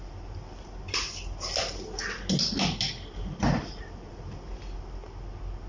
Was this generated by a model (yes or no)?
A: no